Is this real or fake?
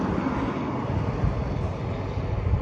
real